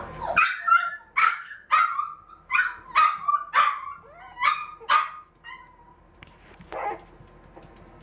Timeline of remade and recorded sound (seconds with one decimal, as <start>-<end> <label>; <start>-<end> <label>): 0.0-1.2 recorded; 1.2-1.7 remade; 1.7-8.0 recorded